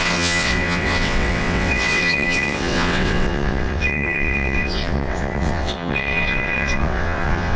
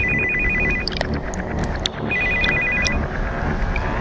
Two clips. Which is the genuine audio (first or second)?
second